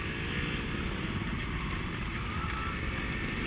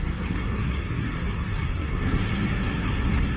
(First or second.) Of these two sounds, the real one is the first